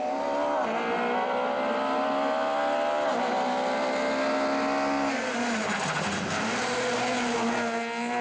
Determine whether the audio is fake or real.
real